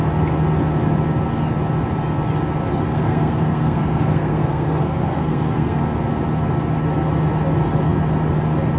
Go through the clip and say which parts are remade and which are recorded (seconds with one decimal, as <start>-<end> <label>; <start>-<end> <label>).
0.0-2.9 recorded; 2.9-5.8 remade; 5.8-8.8 recorded

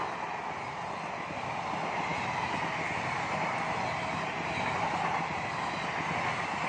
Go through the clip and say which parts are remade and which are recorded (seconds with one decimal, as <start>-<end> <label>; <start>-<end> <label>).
0.0-6.7 recorded